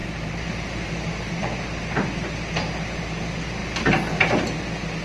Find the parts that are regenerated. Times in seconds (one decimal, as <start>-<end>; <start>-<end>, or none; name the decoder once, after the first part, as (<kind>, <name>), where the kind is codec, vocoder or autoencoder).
0.0-3.0 (vocoder, BigVGAN v2)